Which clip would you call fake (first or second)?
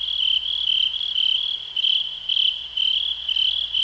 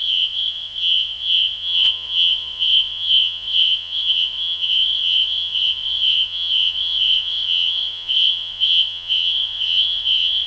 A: second